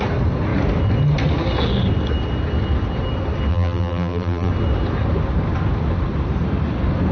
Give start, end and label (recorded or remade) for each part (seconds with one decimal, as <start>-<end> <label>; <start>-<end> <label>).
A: 0.0-3.5 recorded; 3.5-4.5 remade; 4.5-7.1 recorded